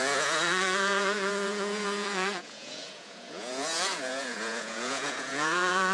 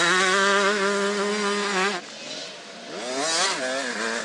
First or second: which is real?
second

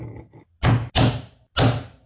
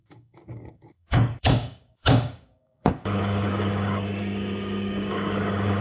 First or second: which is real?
first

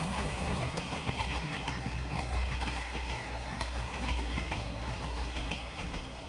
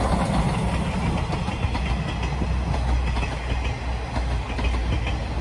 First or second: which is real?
second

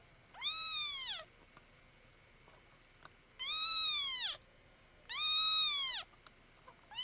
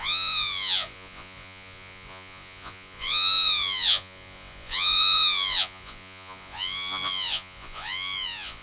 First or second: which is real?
first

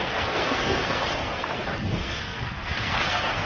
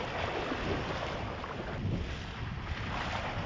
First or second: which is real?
second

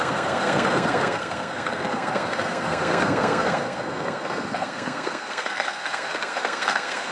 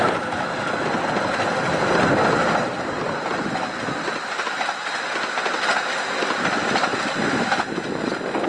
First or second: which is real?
second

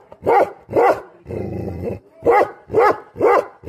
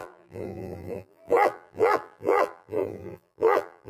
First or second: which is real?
first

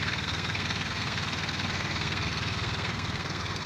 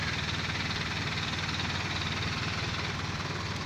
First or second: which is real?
second